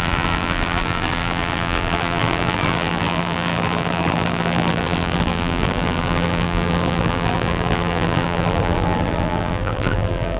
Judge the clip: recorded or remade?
remade